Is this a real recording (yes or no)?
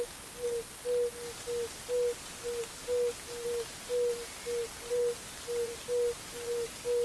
yes